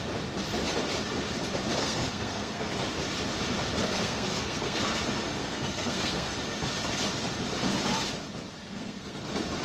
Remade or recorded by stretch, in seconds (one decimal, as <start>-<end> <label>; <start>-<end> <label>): 0.0-1.8 recorded; 1.8-2.7 remade; 2.7-3.8 recorded; 3.8-5.0 remade; 5.0-5.4 recorded; 5.4-6.3 remade; 6.3-8.6 recorded; 8.6-9.2 remade; 9.2-9.6 recorded